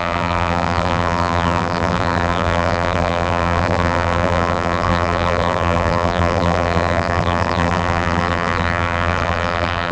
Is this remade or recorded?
remade